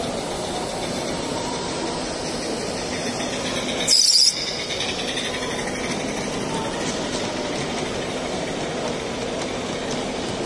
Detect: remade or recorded recorded